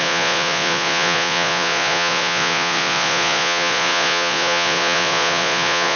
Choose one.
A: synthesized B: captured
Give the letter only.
A